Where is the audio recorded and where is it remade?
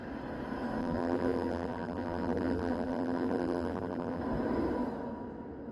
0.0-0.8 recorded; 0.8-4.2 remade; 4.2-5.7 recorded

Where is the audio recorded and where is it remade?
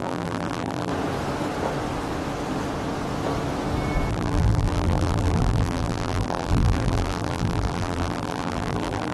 0.0-0.9 remade; 0.9-4.1 recorded; 4.1-9.1 remade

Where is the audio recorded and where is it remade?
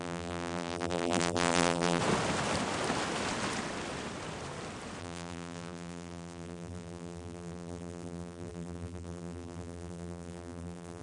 0.0-2.0 remade; 2.0-5.0 recorded; 5.0-11.0 remade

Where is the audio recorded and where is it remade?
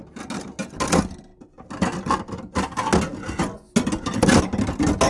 0.0-5.1 recorded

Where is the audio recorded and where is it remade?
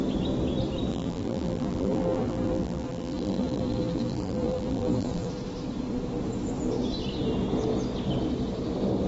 0.0-0.9 recorded; 0.9-5.3 remade; 5.3-9.1 recorded